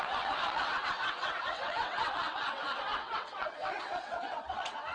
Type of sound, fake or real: fake